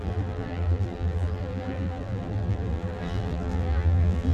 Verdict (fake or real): fake